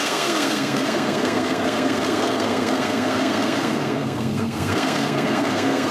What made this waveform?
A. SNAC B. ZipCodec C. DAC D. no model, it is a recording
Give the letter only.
A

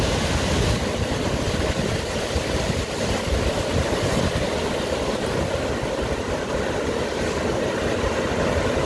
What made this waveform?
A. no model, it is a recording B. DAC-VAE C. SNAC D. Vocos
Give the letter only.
A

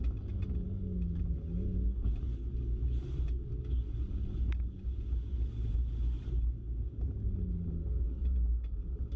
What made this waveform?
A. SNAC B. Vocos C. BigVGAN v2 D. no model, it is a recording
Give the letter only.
D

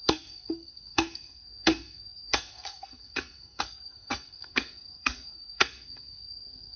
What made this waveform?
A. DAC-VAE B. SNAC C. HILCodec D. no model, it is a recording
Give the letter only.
B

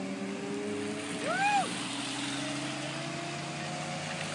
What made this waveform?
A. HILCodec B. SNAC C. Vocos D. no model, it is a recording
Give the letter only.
D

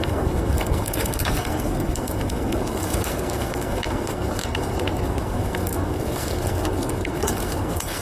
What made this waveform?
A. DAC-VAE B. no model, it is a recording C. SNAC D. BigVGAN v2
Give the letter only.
C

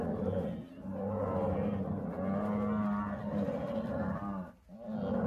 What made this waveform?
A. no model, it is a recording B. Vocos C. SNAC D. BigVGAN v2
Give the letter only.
A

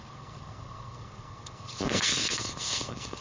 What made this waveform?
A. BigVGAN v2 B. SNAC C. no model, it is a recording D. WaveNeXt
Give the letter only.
B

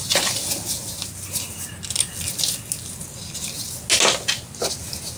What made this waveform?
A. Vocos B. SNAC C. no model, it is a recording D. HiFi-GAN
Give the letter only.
C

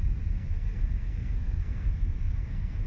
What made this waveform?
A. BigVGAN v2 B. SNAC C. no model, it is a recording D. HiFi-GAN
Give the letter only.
B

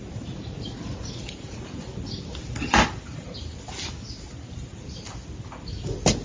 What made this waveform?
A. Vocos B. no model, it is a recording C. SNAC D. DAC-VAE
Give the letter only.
B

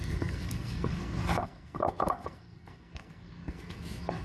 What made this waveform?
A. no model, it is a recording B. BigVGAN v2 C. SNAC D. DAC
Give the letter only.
C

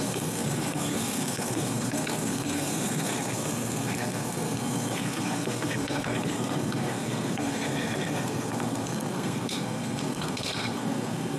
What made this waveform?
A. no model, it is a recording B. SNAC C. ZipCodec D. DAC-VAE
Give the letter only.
B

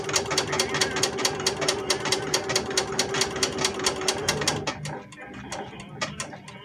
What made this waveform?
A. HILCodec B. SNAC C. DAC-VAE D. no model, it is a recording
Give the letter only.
D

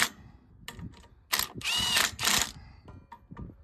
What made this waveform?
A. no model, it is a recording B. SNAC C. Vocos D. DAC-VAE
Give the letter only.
A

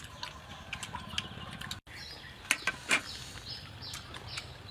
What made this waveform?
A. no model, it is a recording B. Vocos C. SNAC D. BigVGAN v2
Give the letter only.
A